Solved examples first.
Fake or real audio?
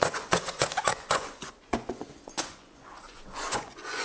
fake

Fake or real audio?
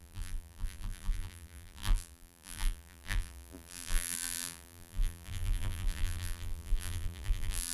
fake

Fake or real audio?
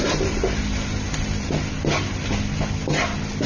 real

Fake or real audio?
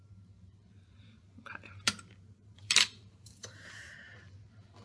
fake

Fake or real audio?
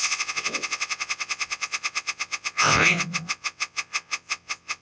fake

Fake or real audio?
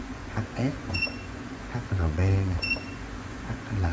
fake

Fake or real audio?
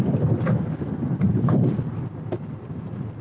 real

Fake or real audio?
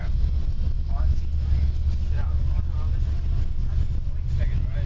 real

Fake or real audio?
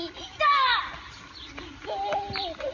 real